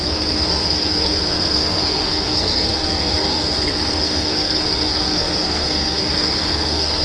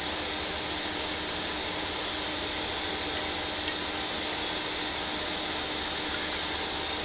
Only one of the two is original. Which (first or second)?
second